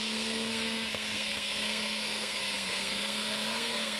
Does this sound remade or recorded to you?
remade